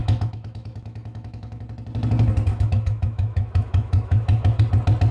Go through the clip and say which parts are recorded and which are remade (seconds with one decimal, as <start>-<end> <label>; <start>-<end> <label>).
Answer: 0.0-1.6 remade; 1.6-2.5 recorded; 2.5-4.6 remade; 4.6-5.1 recorded